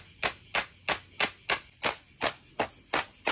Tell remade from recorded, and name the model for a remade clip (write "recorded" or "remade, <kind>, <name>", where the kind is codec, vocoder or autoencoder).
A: recorded